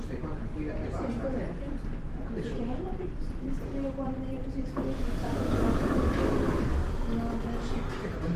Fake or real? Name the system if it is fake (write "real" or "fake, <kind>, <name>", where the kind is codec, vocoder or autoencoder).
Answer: real